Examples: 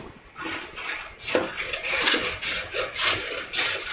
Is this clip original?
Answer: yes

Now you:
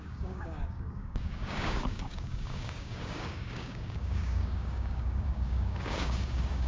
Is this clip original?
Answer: no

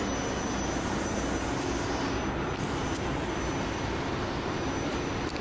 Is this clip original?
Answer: yes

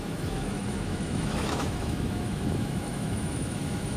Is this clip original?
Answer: no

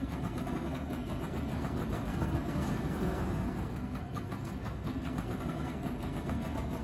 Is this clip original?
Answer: no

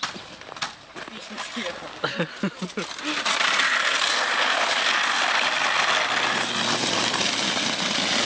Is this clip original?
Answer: yes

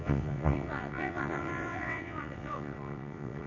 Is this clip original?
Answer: no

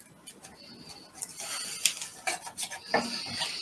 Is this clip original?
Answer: yes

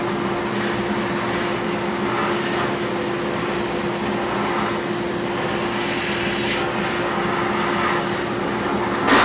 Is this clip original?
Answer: yes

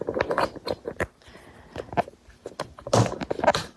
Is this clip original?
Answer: yes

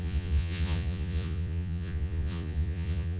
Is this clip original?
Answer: no